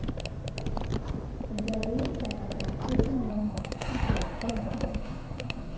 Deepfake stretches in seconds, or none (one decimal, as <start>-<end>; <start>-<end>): 3.3-5.8